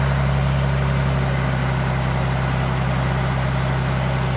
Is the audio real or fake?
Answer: real